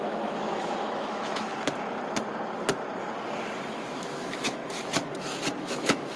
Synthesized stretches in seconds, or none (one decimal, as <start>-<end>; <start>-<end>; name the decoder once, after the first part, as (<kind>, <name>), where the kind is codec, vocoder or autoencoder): 0.0-1.5 (autoencoder, DAC-VAE); 3.7-4.6; 5.7-6.2